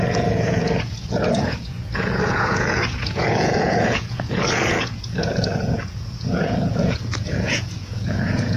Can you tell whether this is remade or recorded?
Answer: remade